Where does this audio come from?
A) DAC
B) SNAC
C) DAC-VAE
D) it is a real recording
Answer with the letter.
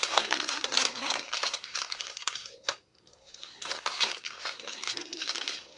B